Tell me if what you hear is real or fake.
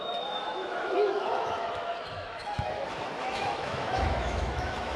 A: fake